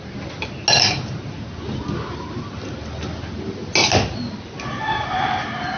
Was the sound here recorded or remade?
recorded